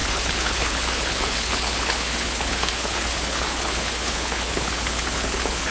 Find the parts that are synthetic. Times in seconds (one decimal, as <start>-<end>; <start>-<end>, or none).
0.0-5.7